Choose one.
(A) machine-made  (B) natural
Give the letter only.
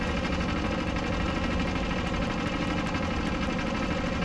B